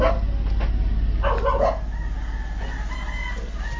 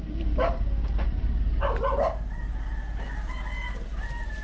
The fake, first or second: second